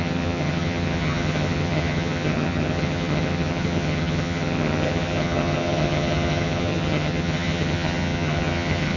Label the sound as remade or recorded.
remade